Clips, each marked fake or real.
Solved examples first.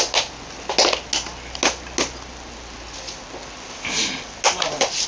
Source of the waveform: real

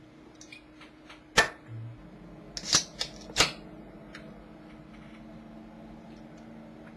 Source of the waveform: real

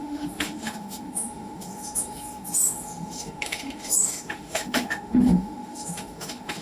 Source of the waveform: fake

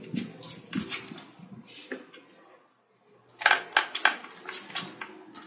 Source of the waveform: real